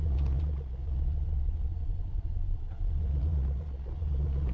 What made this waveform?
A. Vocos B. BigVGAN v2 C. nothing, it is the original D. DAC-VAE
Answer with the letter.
A